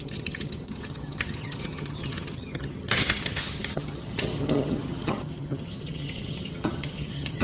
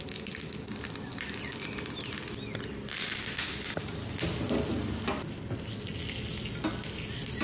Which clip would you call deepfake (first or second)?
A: first